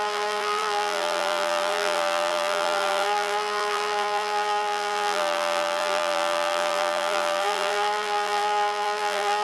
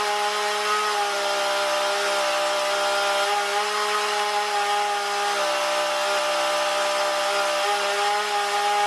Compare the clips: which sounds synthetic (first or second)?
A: first